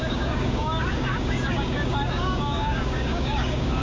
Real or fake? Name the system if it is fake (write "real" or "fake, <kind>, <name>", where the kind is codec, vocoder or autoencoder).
fake, codec, DAC